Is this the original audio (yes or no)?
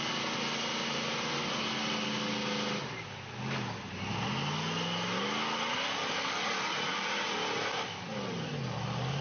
yes